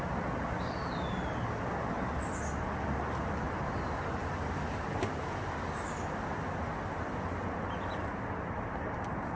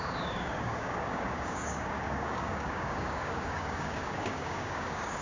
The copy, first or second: second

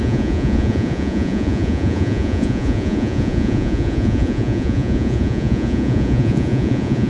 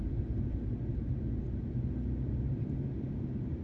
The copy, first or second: first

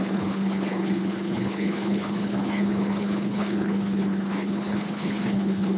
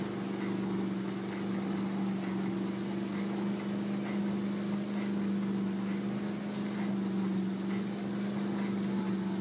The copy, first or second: first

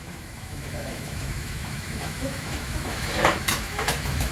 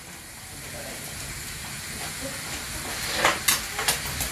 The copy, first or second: first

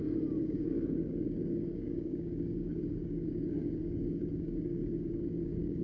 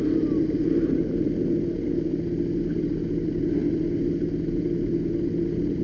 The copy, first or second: first